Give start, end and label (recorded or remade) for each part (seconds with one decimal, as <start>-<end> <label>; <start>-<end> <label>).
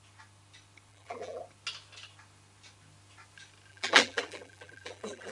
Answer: 0.0-0.9 recorded; 0.9-1.4 remade; 1.4-3.7 recorded; 3.7-5.3 remade